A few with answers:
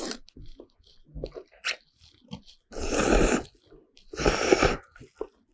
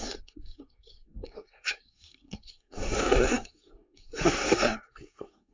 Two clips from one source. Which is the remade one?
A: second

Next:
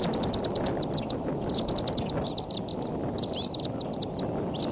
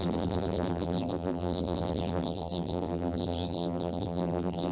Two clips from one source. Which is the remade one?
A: second